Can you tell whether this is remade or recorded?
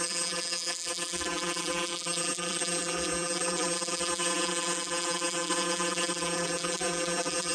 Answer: remade